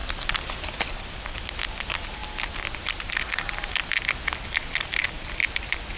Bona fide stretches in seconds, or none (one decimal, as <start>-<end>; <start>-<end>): 0.0-6.0